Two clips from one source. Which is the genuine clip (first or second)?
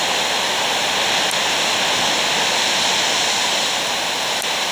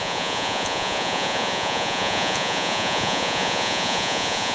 first